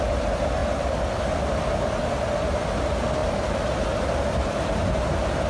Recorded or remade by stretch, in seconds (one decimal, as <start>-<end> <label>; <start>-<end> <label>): 0.0-5.5 recorded